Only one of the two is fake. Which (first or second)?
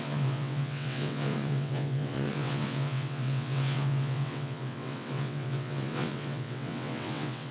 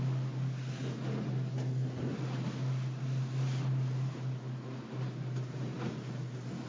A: first